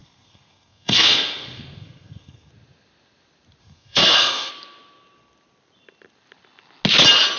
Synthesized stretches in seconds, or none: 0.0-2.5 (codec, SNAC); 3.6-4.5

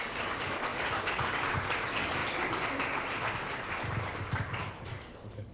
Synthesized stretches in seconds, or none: 0.0-2.2 (codec, DAC); 4.0-5.5

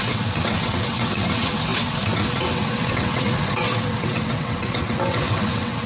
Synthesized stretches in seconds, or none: 0.0-5.9 (vocoder, WaveNeXt)

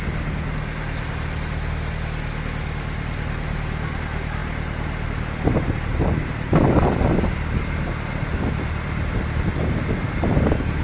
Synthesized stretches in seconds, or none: none

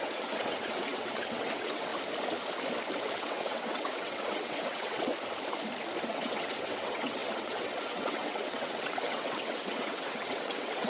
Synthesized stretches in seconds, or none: 0.0-1.9 (vocoder, WaveNeXt); 3.1-5.1; 6.0-10.9

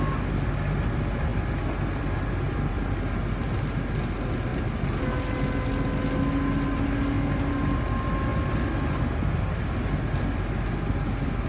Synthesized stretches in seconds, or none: none

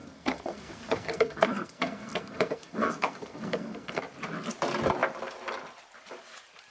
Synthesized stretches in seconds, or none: 0.0-4.0 (codec, SNAC)